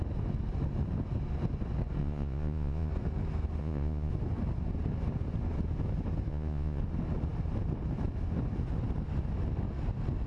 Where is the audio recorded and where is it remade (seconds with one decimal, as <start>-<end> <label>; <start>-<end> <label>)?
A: 0.0-2.0 recorded; 2.0-2.9 remade; 2.9-3.6 recorded; 3.6-4.1 remade; 4.1-6.3 recorded; 6.3-6.8 remade; 6.8-10.3 recorded